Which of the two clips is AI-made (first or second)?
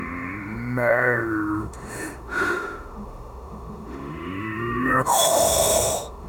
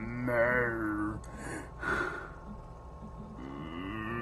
first